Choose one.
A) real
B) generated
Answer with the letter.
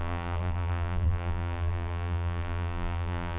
B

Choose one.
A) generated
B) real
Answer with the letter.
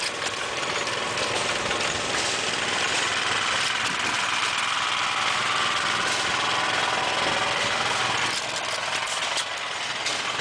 B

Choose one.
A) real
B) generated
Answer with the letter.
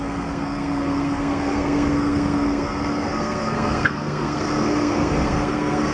B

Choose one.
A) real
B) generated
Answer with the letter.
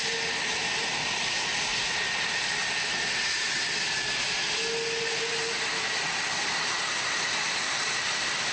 A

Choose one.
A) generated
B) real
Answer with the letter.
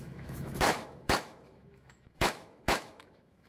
A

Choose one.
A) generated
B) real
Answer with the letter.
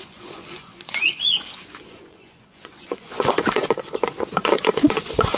A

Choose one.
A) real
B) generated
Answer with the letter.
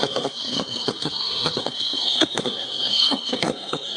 B